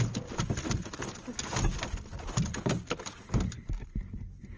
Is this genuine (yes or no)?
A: yes